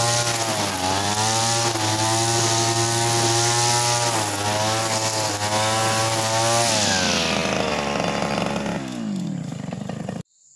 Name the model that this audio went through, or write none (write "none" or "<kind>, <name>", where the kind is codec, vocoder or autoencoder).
none